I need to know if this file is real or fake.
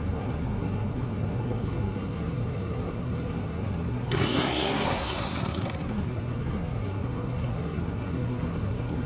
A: fake